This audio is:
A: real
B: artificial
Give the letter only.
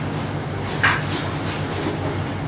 A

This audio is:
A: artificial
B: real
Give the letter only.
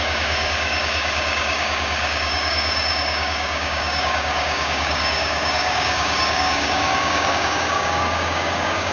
A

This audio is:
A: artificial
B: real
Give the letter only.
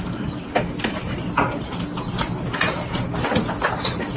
B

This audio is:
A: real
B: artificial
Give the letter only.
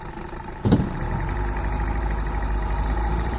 A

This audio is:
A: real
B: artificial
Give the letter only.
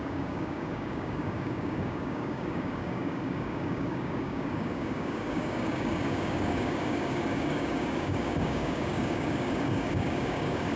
B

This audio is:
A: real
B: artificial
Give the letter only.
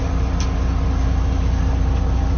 A